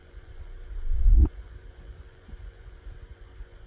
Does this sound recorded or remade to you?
remade